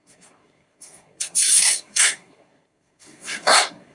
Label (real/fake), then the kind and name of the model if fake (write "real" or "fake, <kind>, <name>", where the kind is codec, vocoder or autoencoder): fake, codec, SNAC